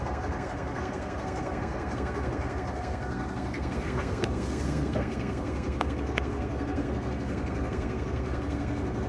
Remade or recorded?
remade